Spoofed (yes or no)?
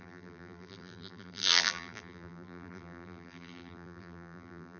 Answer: yes